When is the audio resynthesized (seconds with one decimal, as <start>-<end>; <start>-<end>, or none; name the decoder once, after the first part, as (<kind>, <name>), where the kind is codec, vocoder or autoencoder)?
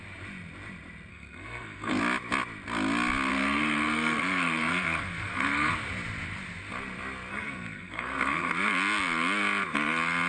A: 1.1-2.0 (codec, SNAC); 3.3-5.7; 7.3-8.5